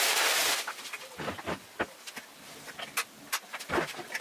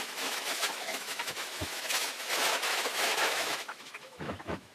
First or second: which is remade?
second